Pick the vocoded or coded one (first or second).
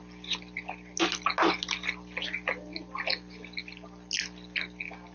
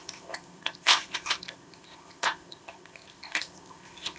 second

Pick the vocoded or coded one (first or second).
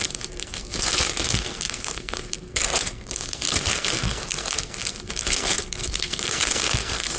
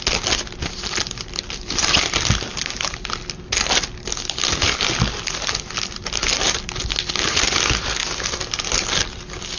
first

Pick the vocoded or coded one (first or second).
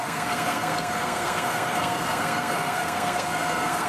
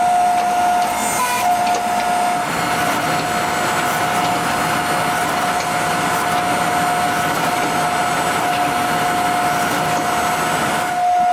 first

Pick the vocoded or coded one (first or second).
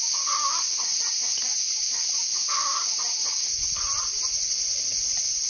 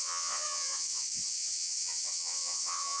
second